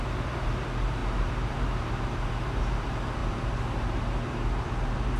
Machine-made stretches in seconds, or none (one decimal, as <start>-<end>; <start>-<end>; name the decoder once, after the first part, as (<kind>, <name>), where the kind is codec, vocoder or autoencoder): 0.0-5.2 (vocoder, BigVGAN v2)